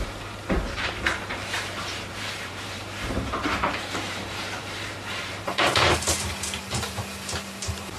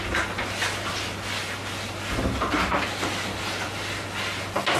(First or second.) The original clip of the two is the second